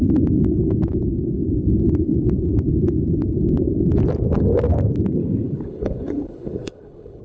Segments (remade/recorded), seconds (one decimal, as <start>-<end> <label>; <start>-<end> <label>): 0.0-5.2 recorded; 5.2-7.2 remade